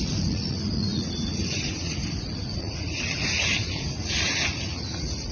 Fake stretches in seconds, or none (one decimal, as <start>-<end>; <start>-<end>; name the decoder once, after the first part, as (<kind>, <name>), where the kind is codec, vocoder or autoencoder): 0.0-2.0 (vocoder, Vocos); 2.6-5.3